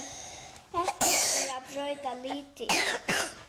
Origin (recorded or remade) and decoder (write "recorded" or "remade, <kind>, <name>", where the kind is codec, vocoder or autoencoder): remade, autoencoder, DAC-VAE